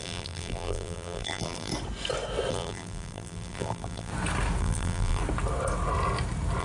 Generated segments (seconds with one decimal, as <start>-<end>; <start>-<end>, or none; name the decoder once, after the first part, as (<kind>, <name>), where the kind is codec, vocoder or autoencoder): 0.0-1.7 (vocoder, BigVGAN v2); 2.5-4.1; 4.6-5.2